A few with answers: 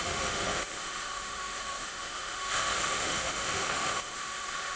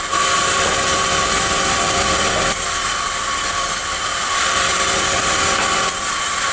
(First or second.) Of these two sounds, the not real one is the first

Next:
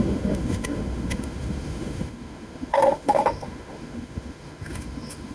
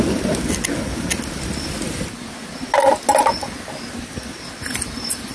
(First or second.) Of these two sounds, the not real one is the first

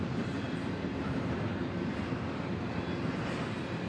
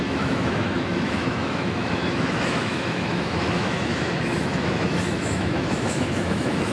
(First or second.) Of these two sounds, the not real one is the second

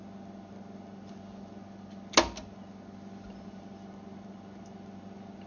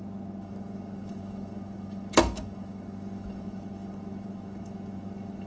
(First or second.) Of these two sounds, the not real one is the second